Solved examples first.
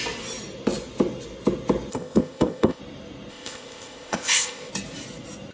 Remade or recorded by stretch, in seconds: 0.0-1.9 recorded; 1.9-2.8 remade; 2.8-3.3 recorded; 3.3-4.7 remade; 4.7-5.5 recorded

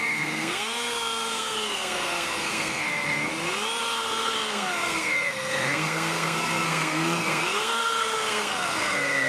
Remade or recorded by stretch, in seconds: 0.0-3.3 remade; 3.3-3.8 recorded; 3.8-9.3 remade